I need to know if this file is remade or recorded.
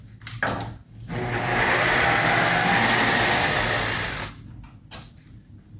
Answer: recorded